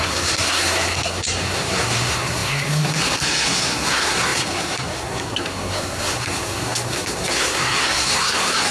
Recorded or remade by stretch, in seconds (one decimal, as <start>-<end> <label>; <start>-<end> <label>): 0.0-8.7 remade